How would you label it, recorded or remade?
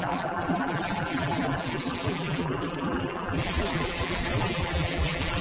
remade